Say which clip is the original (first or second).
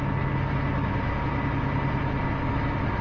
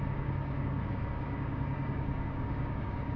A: first